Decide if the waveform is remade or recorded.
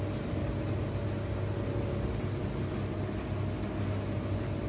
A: recorded